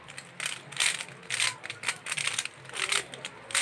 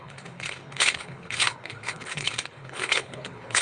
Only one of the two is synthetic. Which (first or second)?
second